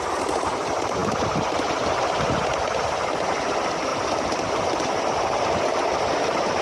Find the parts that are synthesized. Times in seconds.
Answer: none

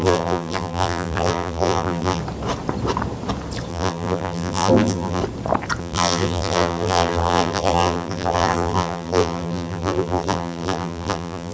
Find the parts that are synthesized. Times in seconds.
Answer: 0.0-2.2 (vocoder, BigVGAN v2); 3.7-5.2; 5.8-11.5

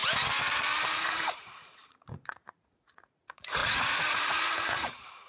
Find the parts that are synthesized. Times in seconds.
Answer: 0.9-5.3 (vocoder, Vocos)

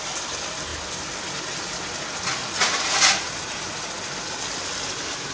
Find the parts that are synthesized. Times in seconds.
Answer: 2.4-3.6 (vocoder, Vocos)

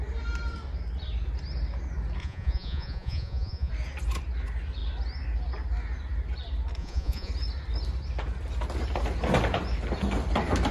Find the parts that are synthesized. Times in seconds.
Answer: 2.2-3.7 (vocoder, Vocos); 6.8-7.3

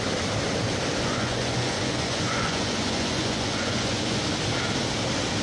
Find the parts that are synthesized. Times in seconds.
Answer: 1.0-4.2 (vocoder, Vocos)